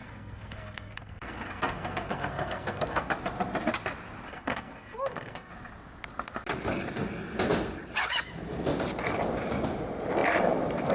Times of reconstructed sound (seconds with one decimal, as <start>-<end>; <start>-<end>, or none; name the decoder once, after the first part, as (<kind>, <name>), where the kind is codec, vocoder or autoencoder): 0.0-3.1 (codec, SNAC); 4.3-5.5